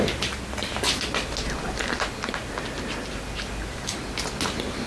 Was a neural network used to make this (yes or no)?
no